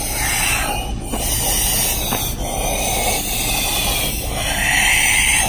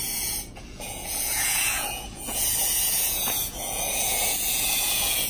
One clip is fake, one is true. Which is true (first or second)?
first